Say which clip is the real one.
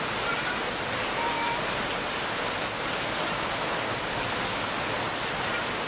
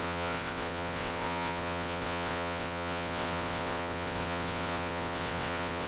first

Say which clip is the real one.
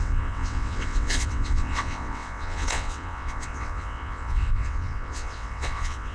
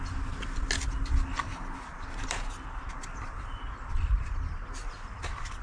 second